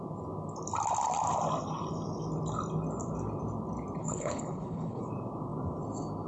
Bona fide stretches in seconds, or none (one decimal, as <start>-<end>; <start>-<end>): 0.0-4.0; 5.0-6.3